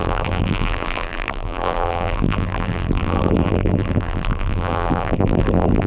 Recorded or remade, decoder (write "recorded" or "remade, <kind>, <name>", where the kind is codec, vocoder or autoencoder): remade, vocoder, BigVGAN v2